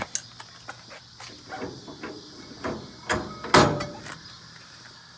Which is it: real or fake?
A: real